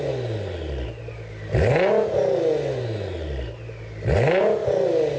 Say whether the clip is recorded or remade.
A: recorded